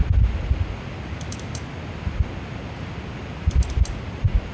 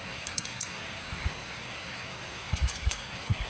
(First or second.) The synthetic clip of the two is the second